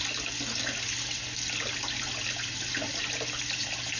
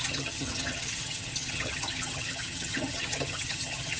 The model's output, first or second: second